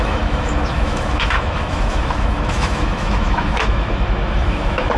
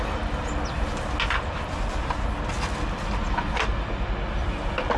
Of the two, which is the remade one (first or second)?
first